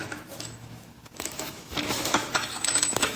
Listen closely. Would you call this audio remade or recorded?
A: remade